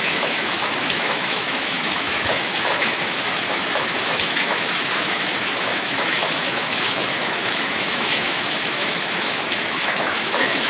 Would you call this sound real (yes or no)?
no